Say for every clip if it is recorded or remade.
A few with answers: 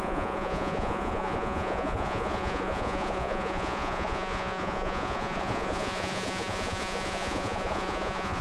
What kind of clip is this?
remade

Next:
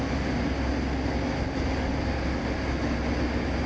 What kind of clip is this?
recorded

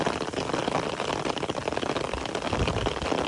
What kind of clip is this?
recorded